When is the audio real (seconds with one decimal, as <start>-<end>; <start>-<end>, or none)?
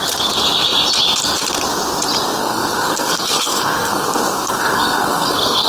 0.0-2.4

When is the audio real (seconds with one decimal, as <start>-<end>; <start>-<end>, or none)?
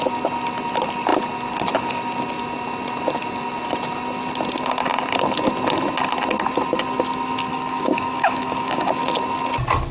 0.0-7.5; 8.9-9.9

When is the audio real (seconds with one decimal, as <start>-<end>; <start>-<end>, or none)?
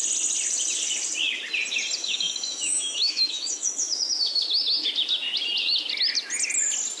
0.0-2.0; 4.9-7.0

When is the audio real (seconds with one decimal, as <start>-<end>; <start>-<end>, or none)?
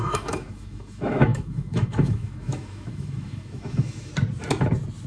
4.1-5.1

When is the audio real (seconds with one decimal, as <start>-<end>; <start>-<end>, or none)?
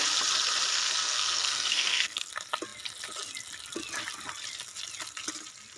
0.0-0.7; 2.3-5.8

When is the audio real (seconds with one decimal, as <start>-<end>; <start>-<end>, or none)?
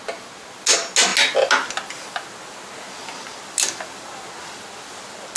0.0-5.4